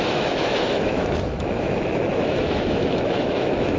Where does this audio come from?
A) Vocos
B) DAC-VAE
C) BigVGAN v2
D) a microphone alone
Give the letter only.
B